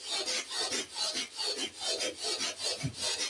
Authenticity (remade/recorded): recorded